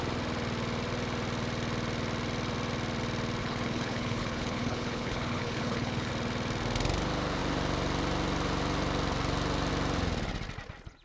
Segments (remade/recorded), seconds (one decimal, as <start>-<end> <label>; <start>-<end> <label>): 0.0-3.4 recorded; 3.4-6.1 remade; 6.1-11.0 recorded